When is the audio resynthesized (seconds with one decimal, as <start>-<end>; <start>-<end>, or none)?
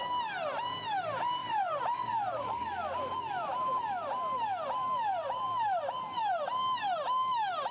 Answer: 1.4-2.6; 5.1-6.8